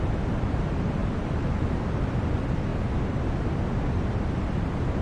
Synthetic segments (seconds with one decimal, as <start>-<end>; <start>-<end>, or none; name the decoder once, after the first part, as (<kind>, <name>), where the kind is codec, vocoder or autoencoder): 0.0-1.0 (vocoder, BigVGAN v2); 2.3-2.7; 4.4-5.0